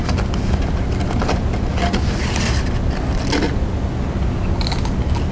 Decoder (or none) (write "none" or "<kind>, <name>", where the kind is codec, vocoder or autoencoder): none